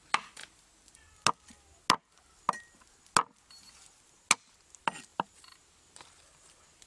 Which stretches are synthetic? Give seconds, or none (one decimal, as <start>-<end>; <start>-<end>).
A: 5.1-5.7